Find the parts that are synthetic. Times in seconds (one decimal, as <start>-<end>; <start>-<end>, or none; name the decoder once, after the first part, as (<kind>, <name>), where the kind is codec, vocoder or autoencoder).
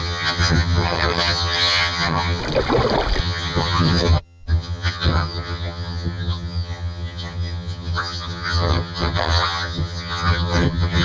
0.0-2.4 (vocoder, HiFi-GAN); 3.2-11.0